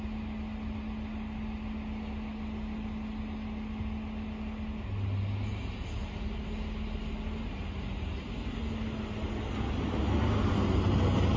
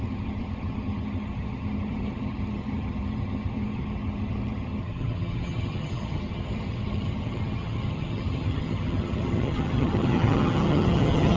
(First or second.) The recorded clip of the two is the first